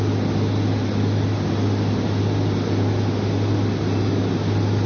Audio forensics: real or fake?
real